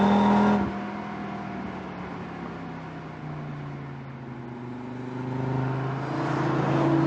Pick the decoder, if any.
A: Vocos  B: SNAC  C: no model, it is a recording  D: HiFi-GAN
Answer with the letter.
C